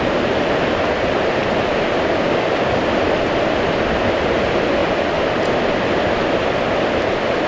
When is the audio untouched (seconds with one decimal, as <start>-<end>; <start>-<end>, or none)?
0.0-7.5